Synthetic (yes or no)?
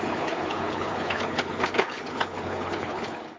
yes